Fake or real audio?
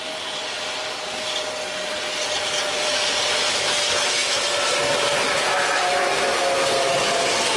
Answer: real